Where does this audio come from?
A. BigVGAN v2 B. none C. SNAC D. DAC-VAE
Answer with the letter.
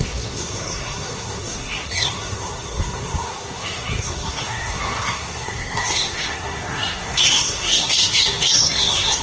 C